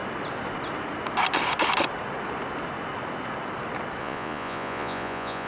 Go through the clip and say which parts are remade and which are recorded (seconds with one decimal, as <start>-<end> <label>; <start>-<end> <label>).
0.0-4.0 recorded; 4.0-5.5 remade